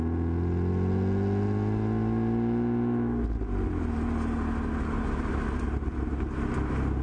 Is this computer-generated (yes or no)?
no